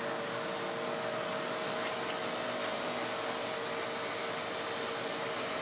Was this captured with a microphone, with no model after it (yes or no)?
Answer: yes